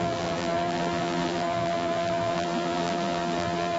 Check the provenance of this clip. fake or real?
fake